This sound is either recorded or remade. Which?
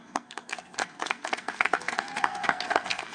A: remade